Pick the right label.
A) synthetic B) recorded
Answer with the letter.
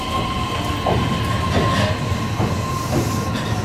B